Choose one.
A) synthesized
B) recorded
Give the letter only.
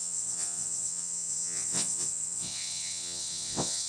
A